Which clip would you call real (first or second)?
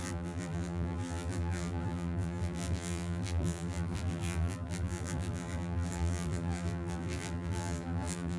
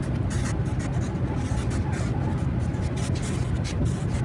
second